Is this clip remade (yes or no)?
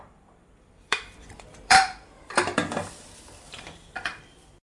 yes